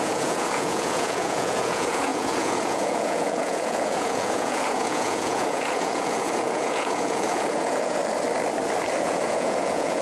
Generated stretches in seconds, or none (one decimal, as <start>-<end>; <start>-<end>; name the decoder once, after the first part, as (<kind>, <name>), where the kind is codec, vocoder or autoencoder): 0.0-8.0 (vocoder, Vocos); 9.0-10.0